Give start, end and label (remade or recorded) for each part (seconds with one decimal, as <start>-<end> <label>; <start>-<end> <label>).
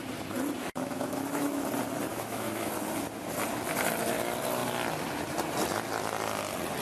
0.0-0.6 recorded; 0.6-1.7 remade; 1.7-2.1 recorded; 2.1-2.7 remade; 2.7-6.8 recorded